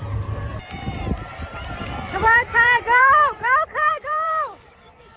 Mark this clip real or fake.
fake